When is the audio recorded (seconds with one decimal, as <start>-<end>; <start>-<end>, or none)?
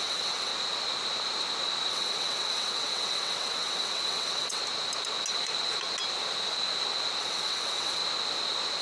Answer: 0.5-1.9; 4.6-7.2; 8.0-8.8